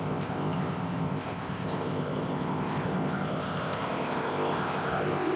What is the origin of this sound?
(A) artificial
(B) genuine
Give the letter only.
A